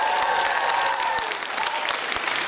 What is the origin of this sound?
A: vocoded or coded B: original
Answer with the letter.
B